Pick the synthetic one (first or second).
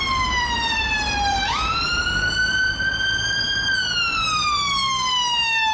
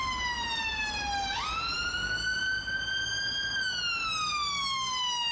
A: first